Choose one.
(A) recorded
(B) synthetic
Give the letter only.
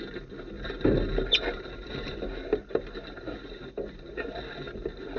A